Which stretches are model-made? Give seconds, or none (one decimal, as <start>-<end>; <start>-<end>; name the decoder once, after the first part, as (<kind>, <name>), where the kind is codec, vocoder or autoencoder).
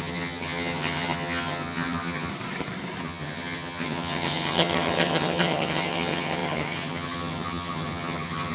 0.0-2.3 (vocoder, HiFi-GAN); 3.0-8.5